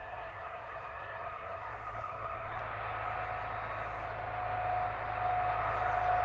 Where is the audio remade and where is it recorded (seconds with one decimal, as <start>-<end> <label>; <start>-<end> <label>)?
0.0-2.6 remade; 2.6-6.2 recorded